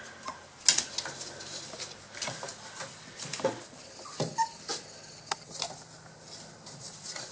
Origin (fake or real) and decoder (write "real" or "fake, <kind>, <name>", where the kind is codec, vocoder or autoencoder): real